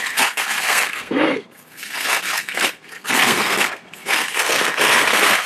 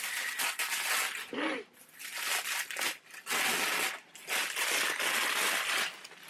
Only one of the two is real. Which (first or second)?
second